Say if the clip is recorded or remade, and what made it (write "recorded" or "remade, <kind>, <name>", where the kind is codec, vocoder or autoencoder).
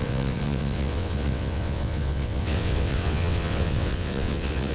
remade, vocoder, WaveNeXt